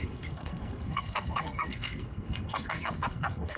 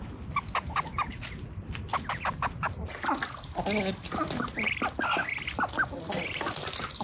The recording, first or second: second